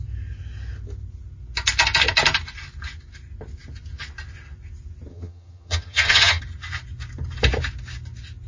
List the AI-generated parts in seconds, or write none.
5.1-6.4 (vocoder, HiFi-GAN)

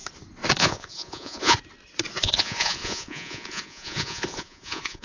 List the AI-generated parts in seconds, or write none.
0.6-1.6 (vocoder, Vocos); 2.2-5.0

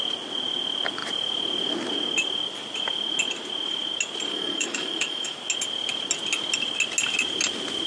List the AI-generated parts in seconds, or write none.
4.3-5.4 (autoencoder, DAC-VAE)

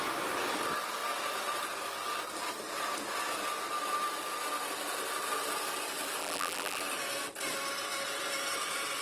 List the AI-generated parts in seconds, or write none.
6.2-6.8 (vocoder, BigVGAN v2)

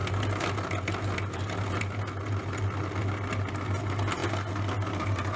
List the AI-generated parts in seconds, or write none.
none

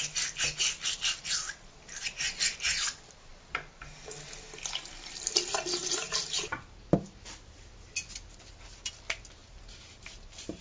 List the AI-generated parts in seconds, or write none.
9.4-10.6 (vocoder, BigVGAN v2)

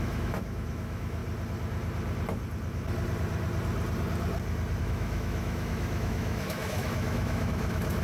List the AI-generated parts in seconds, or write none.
0.0-1.2 (autoencoder, DAC-VAE); 4.8-8.0

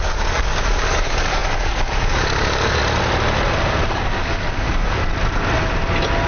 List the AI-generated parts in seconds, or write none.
0.0-2.8 (codec, DAC); 3.9-5.0